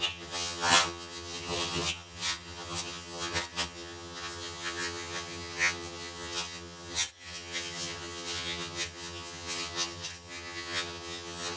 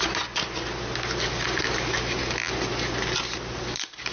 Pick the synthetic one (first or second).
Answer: first